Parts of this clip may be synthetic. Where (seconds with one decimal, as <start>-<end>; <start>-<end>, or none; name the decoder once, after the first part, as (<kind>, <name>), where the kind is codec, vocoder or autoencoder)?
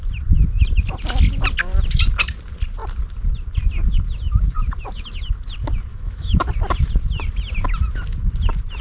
5.9-6.5 (autoencoder, DAC-VAE)